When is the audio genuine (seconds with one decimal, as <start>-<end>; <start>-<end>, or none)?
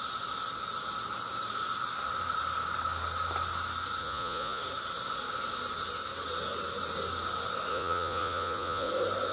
0.0-4.0; 4.6-7.7; 8.9-9.3